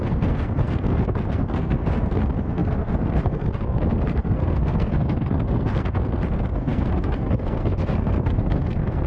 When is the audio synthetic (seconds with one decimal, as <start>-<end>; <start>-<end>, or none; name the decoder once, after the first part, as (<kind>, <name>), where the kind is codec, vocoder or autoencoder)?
0.0-9.1 (codec, SNAC)